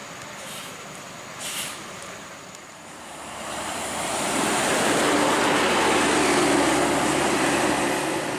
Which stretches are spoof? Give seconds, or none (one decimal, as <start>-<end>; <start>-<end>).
1.3-5.4